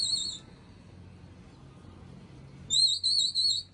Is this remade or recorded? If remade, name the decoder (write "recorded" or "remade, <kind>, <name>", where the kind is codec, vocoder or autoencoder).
recorded